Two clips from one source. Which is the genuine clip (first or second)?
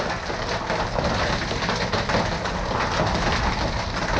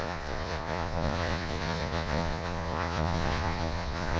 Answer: first